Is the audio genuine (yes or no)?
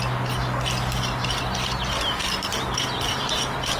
yes